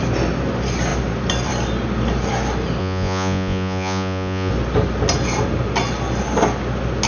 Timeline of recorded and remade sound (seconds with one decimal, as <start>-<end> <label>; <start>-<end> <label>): 0.0-2.8 recorded; 2.8-4.5 remade; 4.5-7.1 recorded